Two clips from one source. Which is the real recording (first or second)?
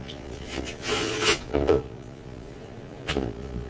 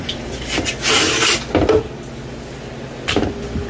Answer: second